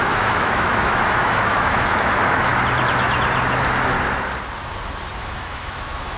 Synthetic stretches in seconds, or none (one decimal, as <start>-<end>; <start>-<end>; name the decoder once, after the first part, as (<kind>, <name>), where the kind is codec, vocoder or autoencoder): 0.0-2.5 (autoencoder, DAC-VAE); 5.2-6.2